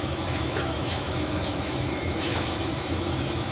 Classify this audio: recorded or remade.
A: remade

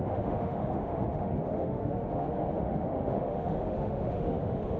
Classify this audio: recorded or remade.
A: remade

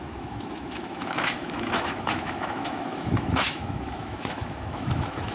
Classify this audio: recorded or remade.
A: remade